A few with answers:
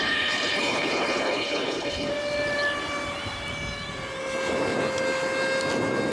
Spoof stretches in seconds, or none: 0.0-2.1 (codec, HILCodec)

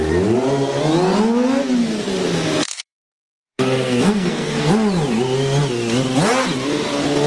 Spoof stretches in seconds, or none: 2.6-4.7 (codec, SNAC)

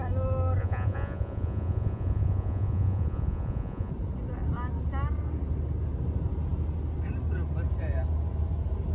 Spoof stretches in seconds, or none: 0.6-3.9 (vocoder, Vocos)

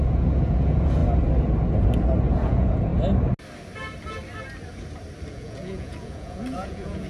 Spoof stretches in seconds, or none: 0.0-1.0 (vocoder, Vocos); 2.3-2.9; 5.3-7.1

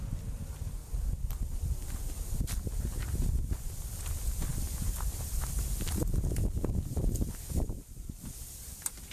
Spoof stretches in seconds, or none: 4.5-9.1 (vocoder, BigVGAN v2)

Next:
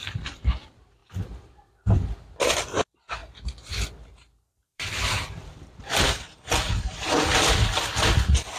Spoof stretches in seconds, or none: 0.0-1.0 (vocoder, BigVGAN v2); 2.5-3.2; 4.5-8.6

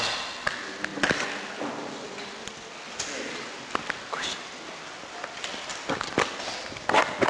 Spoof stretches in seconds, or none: none

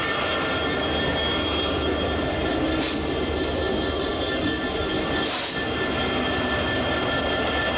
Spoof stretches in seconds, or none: none